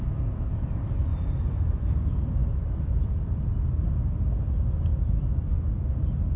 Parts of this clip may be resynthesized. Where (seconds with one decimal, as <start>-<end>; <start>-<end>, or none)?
none